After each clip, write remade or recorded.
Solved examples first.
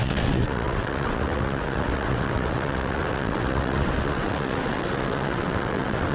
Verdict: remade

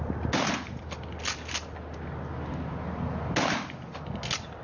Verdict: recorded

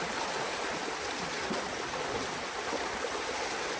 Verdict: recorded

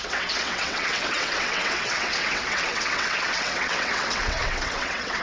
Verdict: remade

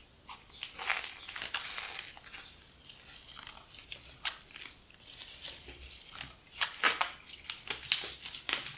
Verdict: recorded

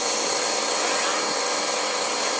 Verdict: remade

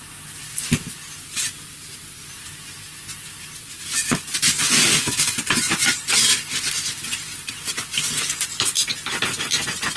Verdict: recorded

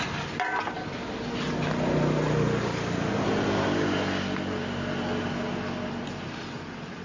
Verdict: recorded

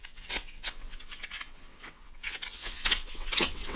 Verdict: remade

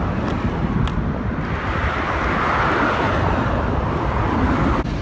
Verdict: recorded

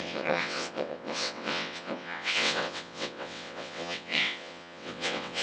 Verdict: remade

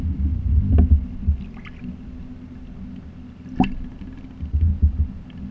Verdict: recorded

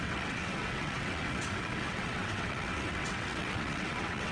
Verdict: remade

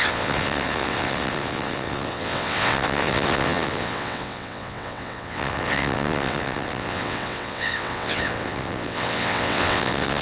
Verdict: remade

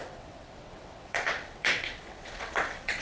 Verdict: remade